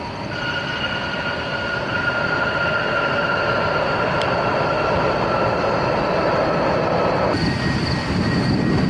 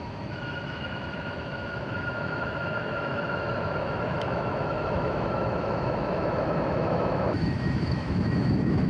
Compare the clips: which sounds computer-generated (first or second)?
second